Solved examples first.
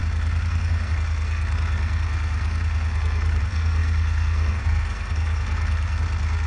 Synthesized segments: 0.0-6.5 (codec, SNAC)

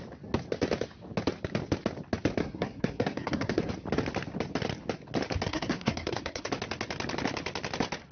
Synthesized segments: 2.4-3.7 (codec, SNAC); 5.5-6.5

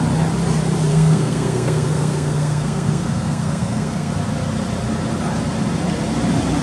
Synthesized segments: 0.9-4.1 (codec, SNAC)